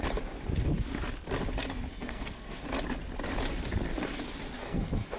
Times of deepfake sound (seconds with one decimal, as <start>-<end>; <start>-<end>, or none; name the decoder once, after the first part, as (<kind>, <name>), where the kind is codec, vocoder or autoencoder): 1.9-2.6 (codec, SNAC); 4.6-5.2